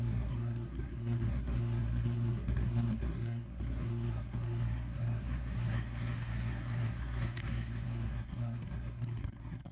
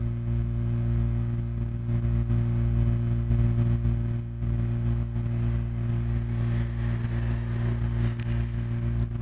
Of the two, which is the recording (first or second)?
second